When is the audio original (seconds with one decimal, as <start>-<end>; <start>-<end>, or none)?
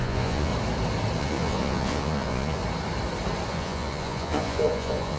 0.5-1.2; 2.6-3.5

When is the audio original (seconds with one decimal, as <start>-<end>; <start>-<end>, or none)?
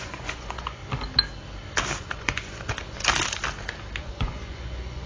0.8-2.0; 3.0-4.0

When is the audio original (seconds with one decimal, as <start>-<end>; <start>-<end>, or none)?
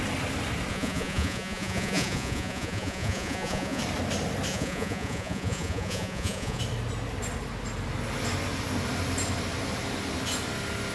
0.0-0.7; 3.8-4.5; 6.6-10.9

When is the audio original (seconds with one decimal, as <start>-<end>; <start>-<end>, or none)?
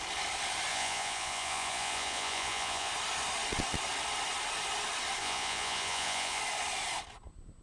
0.0-0.7; 2.9-5.2; 6.4-7.6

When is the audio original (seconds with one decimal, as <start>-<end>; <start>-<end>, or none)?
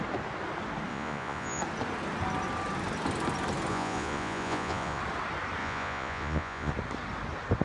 0.0-0.9; 1.6-3.7; 5.0-5.6; 6.7-7.6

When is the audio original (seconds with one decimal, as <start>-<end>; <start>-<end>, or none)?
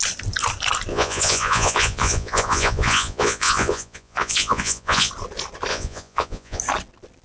0.0-0.9; 5.1-5.7; 6.6-7.2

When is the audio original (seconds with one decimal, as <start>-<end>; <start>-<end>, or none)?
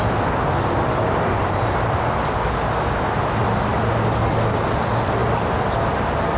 0.0-6.4